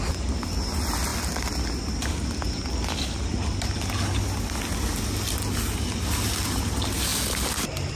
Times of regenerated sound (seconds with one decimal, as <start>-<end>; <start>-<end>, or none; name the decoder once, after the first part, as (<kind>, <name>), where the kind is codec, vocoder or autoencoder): none